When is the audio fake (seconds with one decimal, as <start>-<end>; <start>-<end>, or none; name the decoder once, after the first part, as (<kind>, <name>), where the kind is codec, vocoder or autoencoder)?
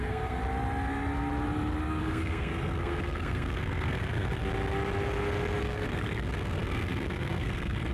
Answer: 0.0-0.4 (codec, SNAC); 2.0-4.4; 5.6-7.9